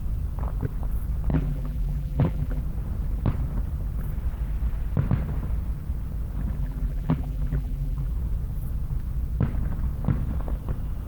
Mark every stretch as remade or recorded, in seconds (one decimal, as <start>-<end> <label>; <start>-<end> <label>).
0.0-1.3 recorded; 1.3-2.6 remade; 2.6-6.6 recorded; 6.6-8.1 remade; 8.1-11.1 recorded